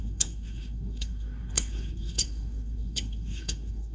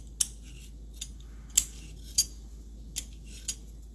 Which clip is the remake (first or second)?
first